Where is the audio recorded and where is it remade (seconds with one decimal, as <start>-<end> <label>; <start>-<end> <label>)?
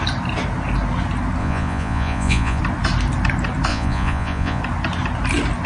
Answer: 0.0-1.4 recorded; 1.4-2.6 remade; 2.6-3.7 recorded; 3.7-4.6 remade; 4.6-5.7 recorded